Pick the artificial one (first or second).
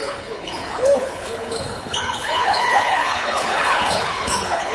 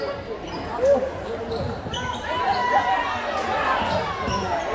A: first